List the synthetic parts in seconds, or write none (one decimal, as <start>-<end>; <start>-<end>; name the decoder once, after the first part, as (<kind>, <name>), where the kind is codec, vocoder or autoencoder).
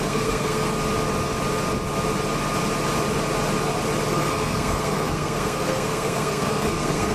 0.0-0.7 (codec, SNAC); 4.1-7.1